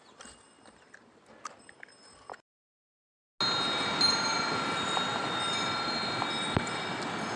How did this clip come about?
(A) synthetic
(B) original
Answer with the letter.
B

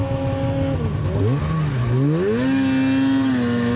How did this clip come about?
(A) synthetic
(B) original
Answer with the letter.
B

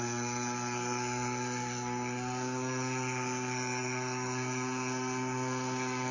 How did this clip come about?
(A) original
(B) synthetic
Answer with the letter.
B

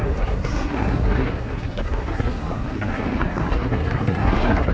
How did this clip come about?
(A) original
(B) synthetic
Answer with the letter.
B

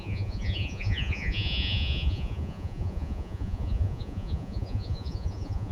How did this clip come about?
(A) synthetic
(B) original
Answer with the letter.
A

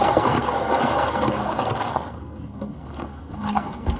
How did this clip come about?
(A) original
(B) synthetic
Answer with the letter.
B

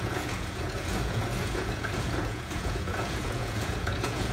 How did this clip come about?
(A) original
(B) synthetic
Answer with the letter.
B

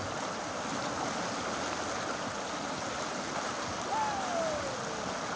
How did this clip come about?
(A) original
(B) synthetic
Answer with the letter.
A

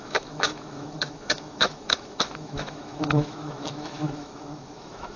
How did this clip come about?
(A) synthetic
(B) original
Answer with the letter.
A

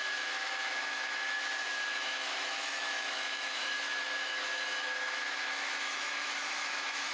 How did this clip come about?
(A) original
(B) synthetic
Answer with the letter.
B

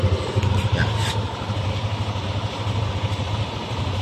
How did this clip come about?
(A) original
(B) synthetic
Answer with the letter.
A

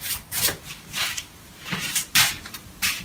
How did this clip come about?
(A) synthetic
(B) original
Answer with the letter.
A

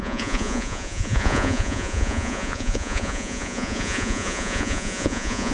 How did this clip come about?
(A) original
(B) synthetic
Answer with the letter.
B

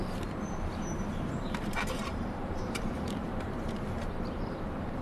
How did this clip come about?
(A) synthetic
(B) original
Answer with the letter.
A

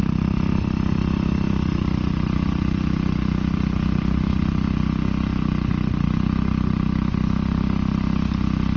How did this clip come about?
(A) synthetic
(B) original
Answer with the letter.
B